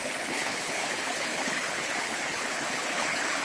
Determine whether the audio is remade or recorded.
remade